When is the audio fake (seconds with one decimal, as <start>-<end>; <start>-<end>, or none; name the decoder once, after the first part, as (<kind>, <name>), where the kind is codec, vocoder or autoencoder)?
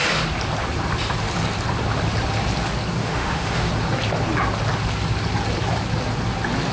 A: 3.0-3.7 (autoencoder, DAC-VAE)